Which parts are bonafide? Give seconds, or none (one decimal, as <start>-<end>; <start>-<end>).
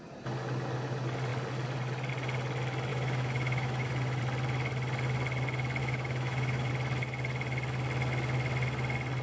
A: 0.0-2.9; 4.2-5.8; 6.7-9.2